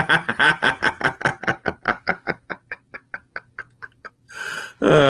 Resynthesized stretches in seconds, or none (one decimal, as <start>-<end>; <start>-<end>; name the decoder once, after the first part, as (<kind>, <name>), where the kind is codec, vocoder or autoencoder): 1.3-4.4 (codec, DAC)